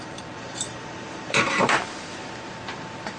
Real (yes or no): no